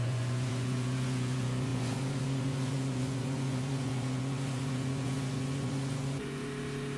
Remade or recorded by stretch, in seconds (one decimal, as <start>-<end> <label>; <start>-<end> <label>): 0.0-6.4 remade; 6.4-7.0 recorded